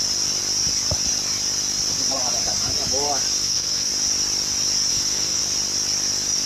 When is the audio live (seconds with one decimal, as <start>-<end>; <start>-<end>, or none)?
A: 0.0-3.4; 3.9-4.9; 5.4-6.5